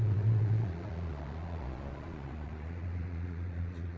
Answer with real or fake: fake